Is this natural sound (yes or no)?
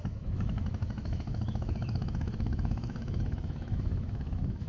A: no